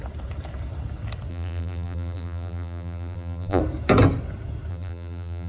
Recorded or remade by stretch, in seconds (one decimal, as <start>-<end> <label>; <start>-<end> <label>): 0.0-1.3 recorded; 1.3-3.6 remade; 3.6-4.7 recorded; 4.7-5.5 remade

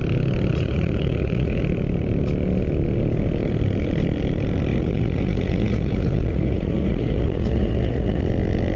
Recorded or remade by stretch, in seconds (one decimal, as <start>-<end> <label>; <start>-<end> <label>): 0.0-0.5 recorded; 0.5-1.6 remade; 1.6-4.7 recorded; 4.7-8.2 remade; 8.2-8.8 recorded

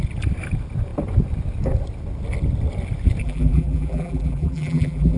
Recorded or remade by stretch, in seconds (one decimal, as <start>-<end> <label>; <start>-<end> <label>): 0.0-3.2 recorded; 3.2-5.2 remade

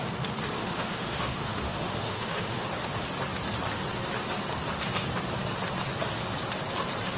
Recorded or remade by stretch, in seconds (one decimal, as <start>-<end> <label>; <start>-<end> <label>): 0.0-0.6 recorded; 0.6-2.6 remade; 2.6-7.2 recorded